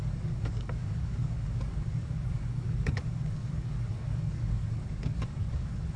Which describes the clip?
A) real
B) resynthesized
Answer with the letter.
B